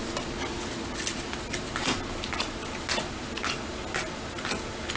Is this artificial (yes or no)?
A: no